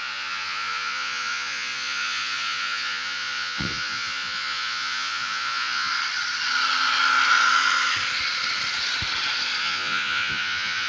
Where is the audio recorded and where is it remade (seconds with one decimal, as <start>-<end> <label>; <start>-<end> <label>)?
0.0-5.9 remade; 5.9-9.6 recorded; 9.6-10.9 remade